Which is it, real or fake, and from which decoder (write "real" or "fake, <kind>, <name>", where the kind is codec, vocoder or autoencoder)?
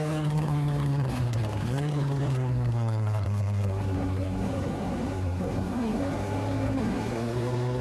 fake, codec, SNAC